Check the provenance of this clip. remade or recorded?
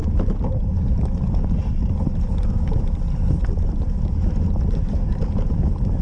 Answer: recorded